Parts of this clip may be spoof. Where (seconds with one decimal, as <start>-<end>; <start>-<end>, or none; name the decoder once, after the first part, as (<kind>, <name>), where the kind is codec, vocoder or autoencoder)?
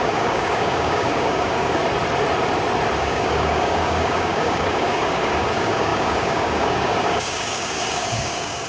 0.0-1.8 (codec, DAC); 3.0-8.7